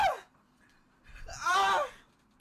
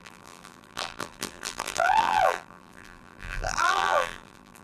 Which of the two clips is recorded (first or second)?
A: first